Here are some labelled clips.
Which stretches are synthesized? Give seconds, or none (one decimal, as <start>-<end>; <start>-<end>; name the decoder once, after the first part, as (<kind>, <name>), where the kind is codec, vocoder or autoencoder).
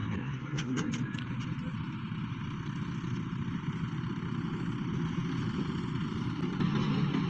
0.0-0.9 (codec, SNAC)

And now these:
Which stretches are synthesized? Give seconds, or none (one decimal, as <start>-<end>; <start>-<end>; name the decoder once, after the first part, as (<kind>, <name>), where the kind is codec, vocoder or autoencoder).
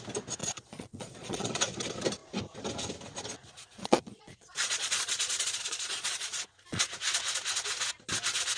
0.4-1.6 (vocoder, Vocos); 3.4-6.9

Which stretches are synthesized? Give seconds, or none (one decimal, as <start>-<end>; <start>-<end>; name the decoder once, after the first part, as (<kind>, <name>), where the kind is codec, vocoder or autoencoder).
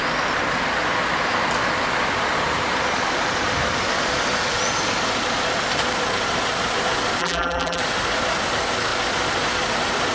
7.2-7.8 (vocoder, BigVGAN v2)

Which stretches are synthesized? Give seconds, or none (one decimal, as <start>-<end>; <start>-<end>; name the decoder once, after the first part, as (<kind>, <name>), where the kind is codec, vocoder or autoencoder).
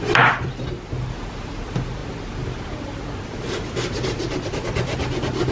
none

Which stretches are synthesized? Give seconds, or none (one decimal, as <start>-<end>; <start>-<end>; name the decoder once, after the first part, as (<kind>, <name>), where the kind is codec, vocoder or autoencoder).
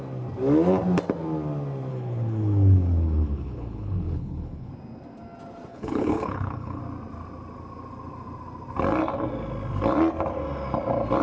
1.9-4.7 (codec, HILCodec); 5.7-6.8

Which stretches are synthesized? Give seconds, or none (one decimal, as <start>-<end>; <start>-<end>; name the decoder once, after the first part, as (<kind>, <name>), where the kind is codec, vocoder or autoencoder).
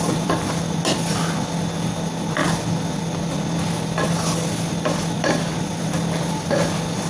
none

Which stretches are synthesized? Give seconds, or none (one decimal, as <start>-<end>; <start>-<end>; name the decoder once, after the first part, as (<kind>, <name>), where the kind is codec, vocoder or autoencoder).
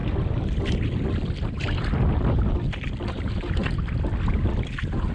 3.1-3.6 (vocoder, BigVGAN v2); 4.3-5.1